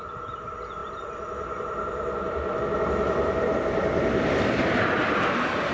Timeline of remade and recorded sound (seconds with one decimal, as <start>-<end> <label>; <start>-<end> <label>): 0.0-0.8 recorded; 0.8-2.6 remade; 2.6-5.7 recorded